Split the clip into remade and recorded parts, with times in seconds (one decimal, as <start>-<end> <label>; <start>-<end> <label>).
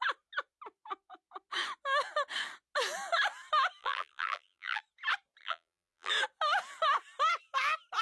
0.0-3.8 recorded; 3.8-4.8 remade; 4.8-5.4 recorded; 5.4-6.1 remade; 6.1-8.0 recorded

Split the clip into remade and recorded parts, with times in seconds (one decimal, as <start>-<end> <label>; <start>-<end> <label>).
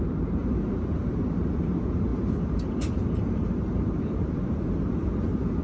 0.0-0.4 recorded; 0.4-1.2 remade; 1.2-2.1 recorded; 2.1-5.6 remade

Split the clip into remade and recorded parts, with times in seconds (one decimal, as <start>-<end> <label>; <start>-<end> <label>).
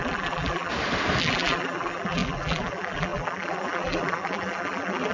0.0-0.7 remade; 0.7-1.2 recorded; 1.2-5.1 remade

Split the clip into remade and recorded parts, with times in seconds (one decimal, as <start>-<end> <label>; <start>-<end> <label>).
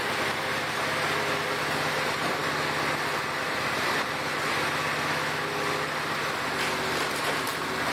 0.0-7.9 recorded